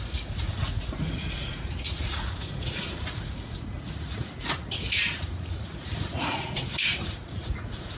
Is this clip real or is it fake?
fake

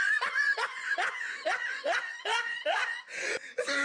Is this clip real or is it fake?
fake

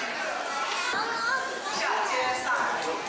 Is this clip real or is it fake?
real